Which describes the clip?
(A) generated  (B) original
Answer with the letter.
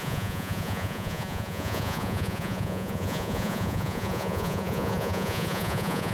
A